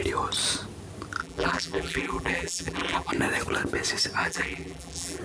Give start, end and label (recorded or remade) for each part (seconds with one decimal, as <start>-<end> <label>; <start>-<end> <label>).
0.0-1.2 recorded; 1.2-3.1 remade; 3.1-4.2 recorded; 4.2-5.2 remade